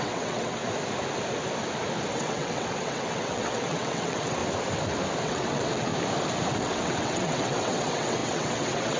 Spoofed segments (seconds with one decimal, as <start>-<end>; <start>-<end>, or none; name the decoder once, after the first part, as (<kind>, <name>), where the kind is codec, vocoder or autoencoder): 0.0-0.6 (vocoder, WaveNeXt); 2.1-4.4; 5.2-5.9; 6.6-9.0